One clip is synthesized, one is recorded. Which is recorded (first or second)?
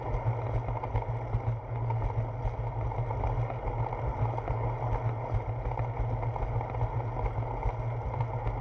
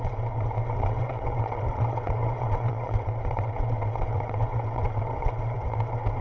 first